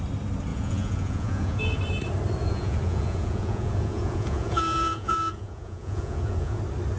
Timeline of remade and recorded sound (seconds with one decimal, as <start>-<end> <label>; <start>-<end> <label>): 0.0-0.5 recorded; 0.5-1.8 remade; 1.8-2.4 recorded; 2.4-6.6 remade; 6.6-7.0 recorded